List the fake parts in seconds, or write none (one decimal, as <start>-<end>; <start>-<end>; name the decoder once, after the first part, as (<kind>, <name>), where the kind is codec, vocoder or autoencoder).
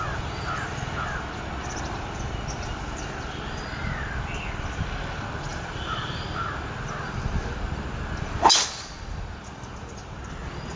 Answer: 5.5-6.2 (vocoder, BigVGAN v2)